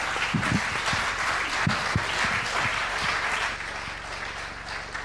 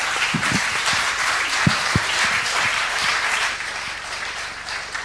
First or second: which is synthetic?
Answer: second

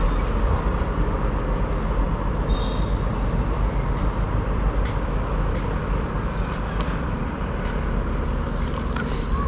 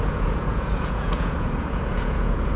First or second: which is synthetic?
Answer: second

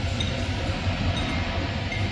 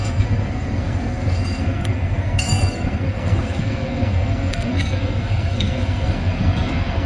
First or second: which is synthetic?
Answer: second